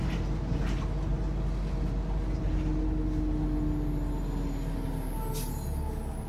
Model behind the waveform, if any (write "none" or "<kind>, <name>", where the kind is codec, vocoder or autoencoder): none